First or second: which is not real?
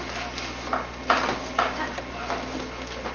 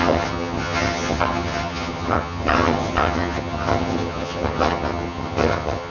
second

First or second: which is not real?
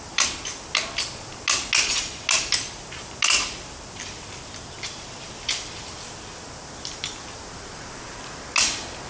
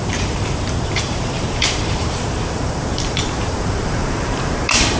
second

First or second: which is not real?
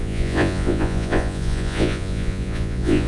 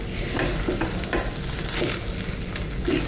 first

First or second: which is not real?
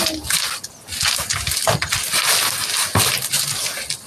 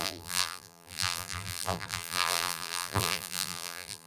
second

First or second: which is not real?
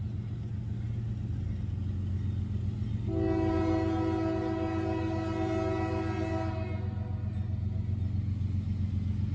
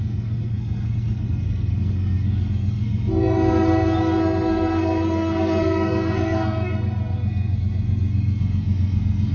second